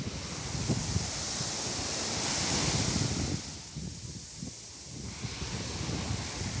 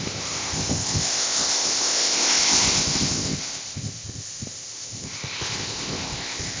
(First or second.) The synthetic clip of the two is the second